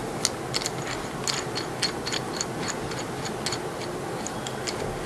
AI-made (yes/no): no